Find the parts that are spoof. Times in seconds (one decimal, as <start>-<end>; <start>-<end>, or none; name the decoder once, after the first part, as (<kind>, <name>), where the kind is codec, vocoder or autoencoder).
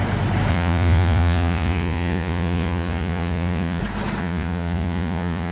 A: 0.5-3.8 (vocoder, Vocos); 4.2-5.5